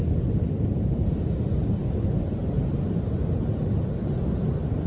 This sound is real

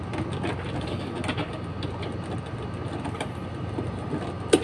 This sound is real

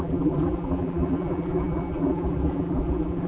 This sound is fake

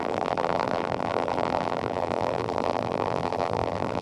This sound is fake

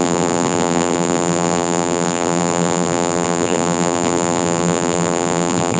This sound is fake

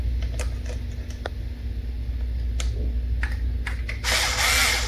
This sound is real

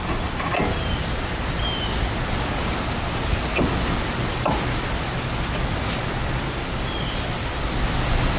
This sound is real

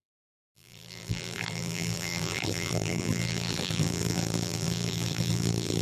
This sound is fake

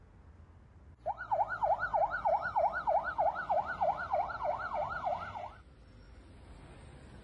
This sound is real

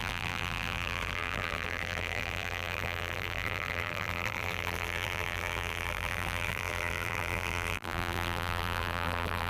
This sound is fake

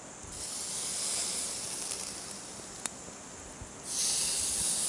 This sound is real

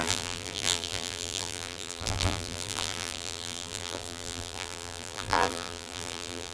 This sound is fake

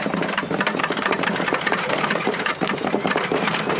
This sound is fake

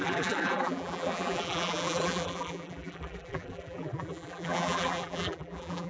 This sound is fake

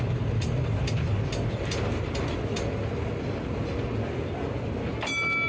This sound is real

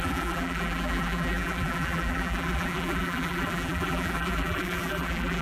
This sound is fake